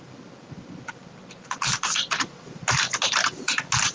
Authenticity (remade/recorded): recorded